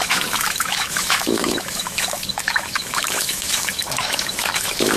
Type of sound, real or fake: fake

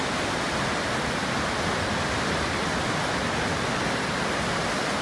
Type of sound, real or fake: real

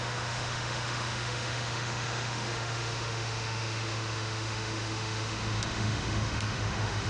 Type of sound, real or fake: fake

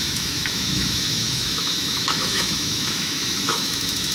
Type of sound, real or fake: fake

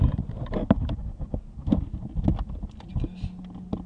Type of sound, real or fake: real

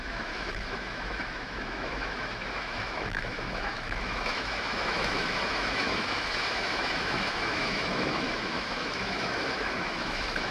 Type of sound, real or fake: fake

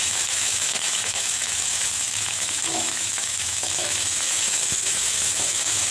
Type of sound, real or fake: fake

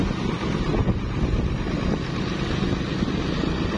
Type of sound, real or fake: real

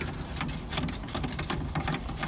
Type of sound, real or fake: real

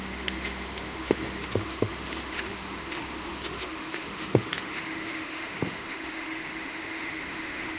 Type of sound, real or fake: fake